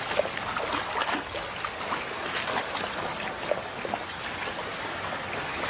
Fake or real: real